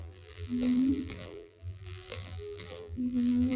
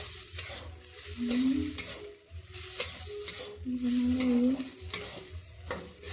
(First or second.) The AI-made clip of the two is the first